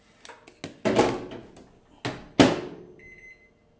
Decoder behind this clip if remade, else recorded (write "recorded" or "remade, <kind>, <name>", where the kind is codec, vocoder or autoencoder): recorded